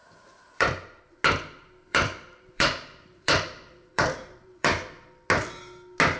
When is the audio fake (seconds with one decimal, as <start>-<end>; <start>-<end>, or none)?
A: 0.0-1.0; 1.9-5.3